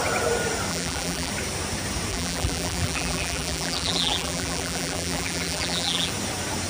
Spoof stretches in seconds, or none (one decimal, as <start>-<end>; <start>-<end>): 0.7-1.3; 2.1-6.1